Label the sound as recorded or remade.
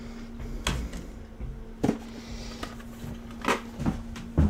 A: recorded